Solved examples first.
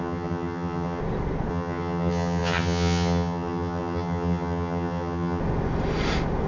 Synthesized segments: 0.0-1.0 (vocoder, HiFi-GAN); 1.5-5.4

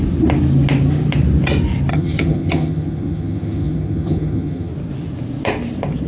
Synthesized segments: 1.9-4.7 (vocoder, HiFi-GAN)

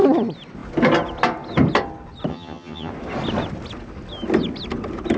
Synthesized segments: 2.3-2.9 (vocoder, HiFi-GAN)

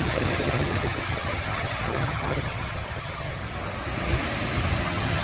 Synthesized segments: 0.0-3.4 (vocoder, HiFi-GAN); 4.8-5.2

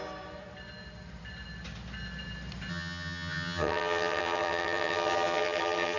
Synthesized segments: 2.7-6.0 (vocoder, HiFi-GAN)

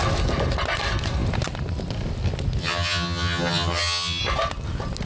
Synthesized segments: 2.6-4.2 (vocoder, HiFi-GAN)

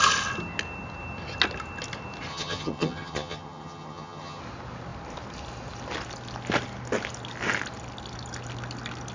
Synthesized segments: 2.3-4.4 (vocoder, HiFi-GAN)

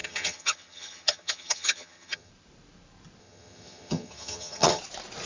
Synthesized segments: 0.0-2.3 (vocoder, HiFi-GAN); 3.2-4.8